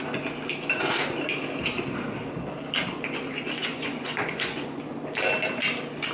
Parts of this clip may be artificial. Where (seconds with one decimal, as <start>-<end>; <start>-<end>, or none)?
3.6-4.8